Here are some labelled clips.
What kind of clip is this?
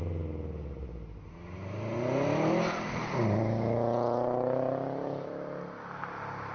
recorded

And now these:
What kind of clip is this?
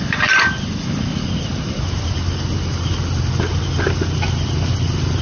recorded